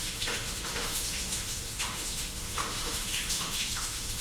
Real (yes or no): no